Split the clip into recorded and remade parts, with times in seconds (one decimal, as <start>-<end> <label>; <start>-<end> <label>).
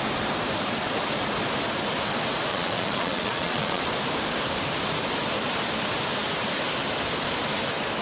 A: 0.0-2.5 recorded; 2.5-3.8 remade; 3.8-8.0 recorded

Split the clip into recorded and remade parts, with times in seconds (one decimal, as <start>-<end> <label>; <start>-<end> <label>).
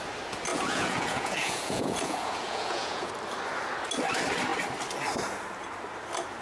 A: 0.0-0.5 recorded; 0.5-3.1 remade; 3.1-6.4 recorded